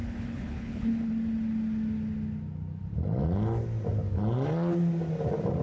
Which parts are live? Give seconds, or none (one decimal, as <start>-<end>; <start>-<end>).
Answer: 1.1-5.6